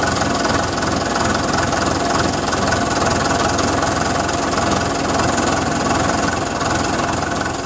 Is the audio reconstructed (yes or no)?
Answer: no